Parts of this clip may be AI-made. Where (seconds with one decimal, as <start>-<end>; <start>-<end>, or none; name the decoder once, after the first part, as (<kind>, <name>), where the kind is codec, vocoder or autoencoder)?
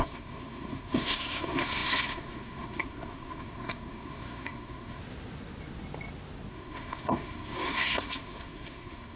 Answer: 0.0-5.0 (codec, SNAC); 6.5-9.2